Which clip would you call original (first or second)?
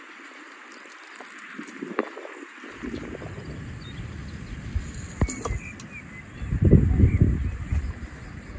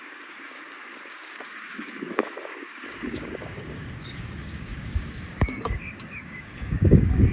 first